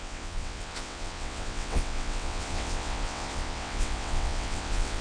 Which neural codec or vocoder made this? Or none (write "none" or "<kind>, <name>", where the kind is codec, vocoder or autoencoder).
vocoder, WaveNeXt